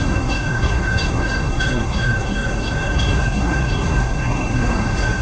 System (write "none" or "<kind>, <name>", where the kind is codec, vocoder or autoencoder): codec, SNAC